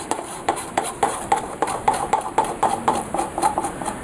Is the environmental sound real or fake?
fake